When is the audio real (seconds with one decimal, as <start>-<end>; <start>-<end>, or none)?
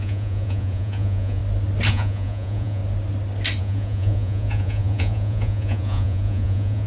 1.4-1.9; 2.8-3.6